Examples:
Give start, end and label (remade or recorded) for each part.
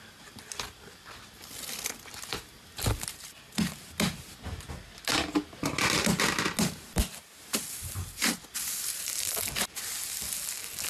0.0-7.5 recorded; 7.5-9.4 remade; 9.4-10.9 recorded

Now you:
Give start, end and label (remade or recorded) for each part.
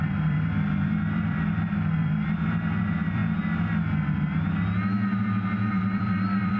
0.0-3.2 remade; 3.2-5.7 recorded; 5.7-6.6 remade